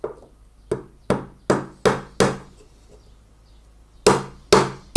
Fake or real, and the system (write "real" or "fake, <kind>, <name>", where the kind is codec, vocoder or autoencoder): real